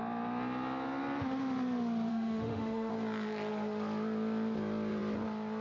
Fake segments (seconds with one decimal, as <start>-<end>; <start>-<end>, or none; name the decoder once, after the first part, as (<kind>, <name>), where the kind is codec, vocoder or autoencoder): 2.1-2.9 (autoencoder, DAC-VAE)